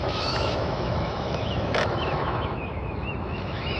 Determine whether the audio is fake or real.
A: fake